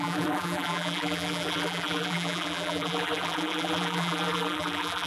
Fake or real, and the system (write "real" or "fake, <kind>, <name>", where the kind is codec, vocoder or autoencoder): fake, vocoder, BigVGAN v2